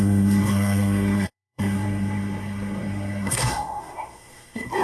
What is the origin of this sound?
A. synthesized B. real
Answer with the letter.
A